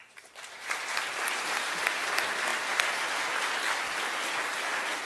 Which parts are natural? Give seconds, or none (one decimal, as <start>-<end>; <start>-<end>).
0.0-5.1